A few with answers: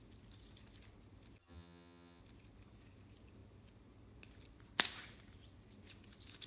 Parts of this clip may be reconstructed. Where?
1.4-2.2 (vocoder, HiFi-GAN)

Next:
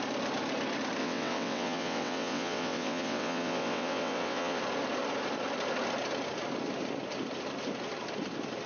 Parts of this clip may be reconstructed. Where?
1.0-4.6 (vocoder, WaveNeXt)

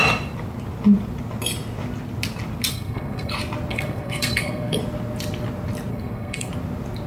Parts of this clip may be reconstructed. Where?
2.7-3.3 (codec, SNAC); 3.7-4.8; 5.9-6.5

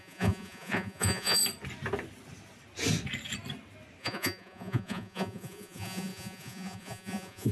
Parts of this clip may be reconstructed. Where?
0.0-1.4 (vocoder, Vocos); 4.0-7.5

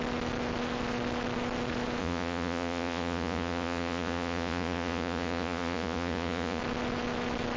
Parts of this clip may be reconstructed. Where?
2.0-6.6 (vocoder, Vocos)